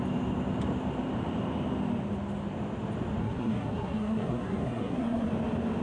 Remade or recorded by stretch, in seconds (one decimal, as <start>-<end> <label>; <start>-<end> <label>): 0.0-3.2 recorded; 3.2-5.3 remade; 5.3-5.8 recorded